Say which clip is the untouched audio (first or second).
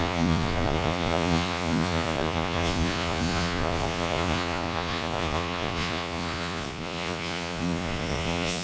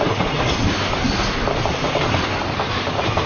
second